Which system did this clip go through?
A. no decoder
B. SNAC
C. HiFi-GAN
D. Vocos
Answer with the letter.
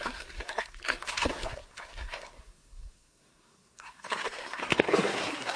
B